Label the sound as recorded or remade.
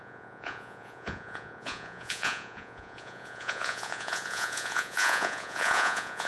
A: remade